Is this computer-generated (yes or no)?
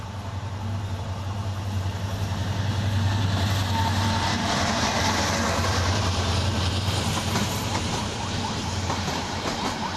yes